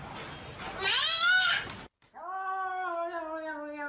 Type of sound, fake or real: real